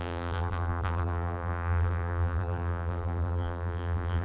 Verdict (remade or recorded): remade